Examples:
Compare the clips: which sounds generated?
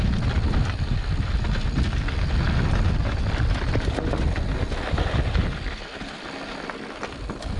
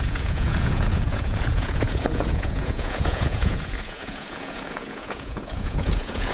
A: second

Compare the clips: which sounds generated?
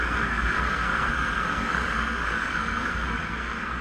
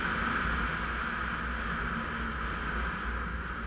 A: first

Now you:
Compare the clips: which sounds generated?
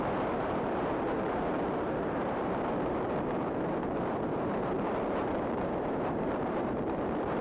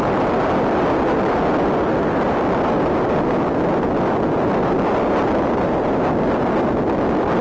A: first